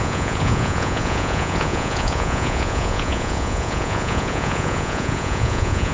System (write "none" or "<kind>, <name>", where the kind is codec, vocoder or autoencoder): vocoder, Vocos